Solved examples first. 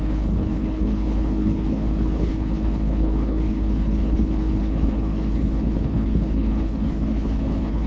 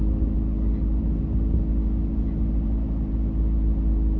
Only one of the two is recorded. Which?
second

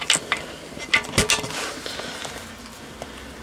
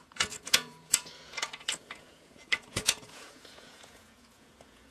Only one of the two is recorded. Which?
first